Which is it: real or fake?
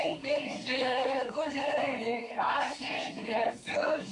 fake